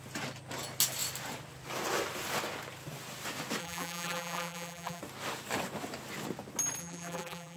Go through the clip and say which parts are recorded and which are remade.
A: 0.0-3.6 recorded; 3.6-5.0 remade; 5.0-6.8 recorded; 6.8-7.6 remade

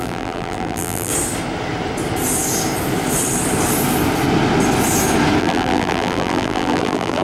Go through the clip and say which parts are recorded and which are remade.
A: 0.0-1.1 remade; 1.1-5.4 recorded; 5.4-7.2 remade

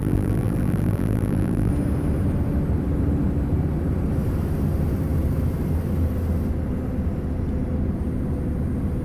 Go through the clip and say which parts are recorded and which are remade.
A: 0.0-1.7 remade; 1.7-9.0 recorded

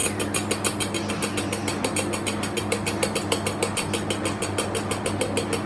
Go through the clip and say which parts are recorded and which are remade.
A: 0.0-5.7 recorded

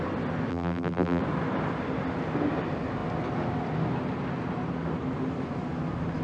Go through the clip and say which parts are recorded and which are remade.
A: 0.0-0.5 recorded; 0.5-1.2 remade; 1.2-6.2 recorded

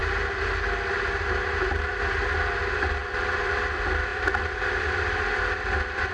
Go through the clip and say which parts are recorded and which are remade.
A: 0.0-3.0 recorded; 3.0-3.5 remade; 3.5-4.1 recorded; 4.1-4.9 remade; 4.9-6.1 recorded

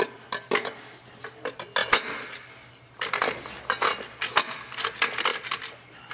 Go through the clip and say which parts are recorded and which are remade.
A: 0.0-6.1 recorded